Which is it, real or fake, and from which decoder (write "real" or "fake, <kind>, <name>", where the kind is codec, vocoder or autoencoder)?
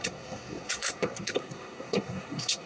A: fake, codec, SNAC